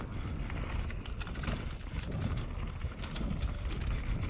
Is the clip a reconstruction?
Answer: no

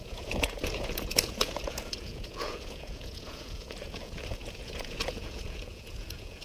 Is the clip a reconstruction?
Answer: yes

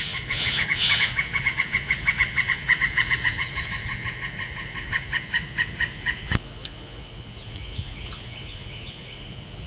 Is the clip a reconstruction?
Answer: yes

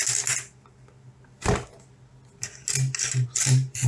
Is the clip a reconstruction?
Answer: no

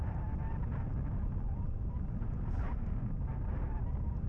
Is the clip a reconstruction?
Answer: no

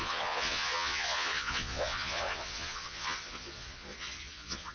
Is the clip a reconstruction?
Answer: yes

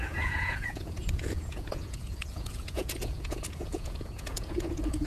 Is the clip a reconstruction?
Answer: yes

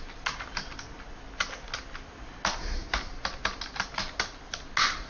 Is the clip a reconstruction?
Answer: no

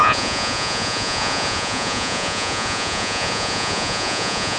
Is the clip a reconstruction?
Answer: yes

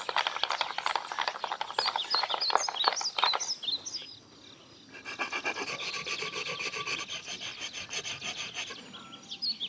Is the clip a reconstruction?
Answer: no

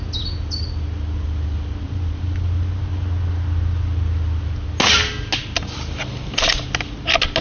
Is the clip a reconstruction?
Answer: no